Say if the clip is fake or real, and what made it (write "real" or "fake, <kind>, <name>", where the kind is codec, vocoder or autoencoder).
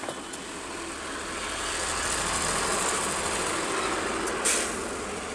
real